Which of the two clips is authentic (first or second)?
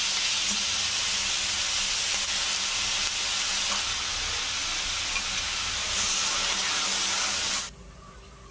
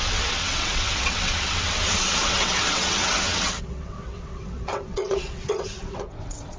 first